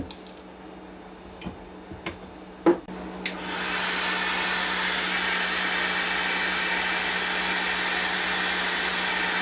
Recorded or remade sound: recorded